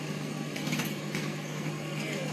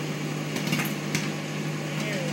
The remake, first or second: first